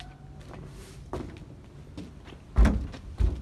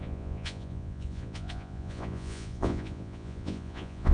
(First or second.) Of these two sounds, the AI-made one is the second